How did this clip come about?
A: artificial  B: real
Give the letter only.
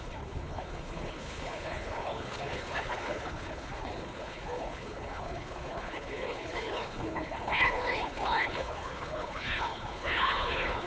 A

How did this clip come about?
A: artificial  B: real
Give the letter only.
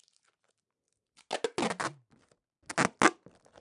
B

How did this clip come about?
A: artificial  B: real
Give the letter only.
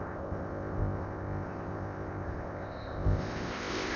A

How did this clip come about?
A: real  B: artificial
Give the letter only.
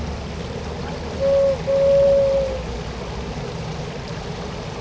A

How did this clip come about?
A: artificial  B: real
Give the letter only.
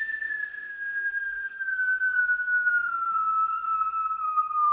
A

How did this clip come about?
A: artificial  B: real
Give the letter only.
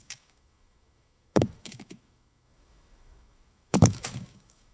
A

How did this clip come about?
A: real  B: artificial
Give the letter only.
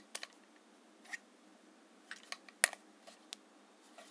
A